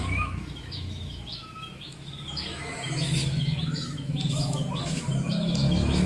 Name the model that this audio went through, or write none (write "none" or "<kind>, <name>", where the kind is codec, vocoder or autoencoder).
autoencoder, DAC-VAE